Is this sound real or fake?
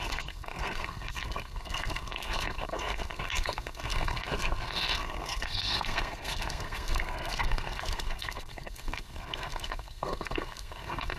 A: fake